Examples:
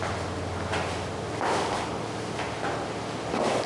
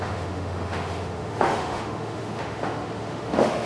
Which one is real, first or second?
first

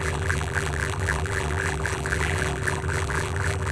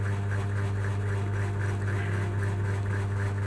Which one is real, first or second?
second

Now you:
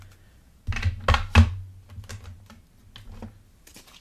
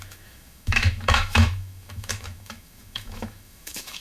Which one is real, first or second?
first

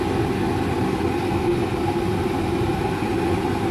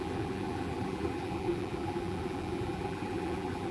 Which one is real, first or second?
first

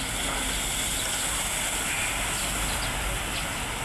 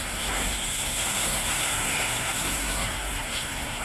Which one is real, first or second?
first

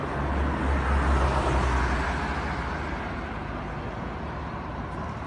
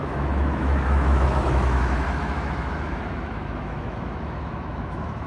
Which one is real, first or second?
first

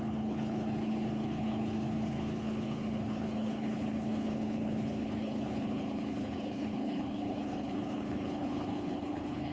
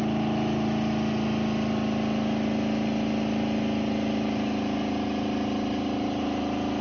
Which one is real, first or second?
second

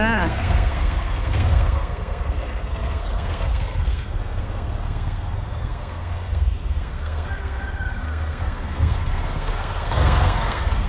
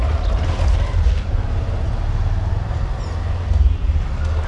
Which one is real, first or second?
second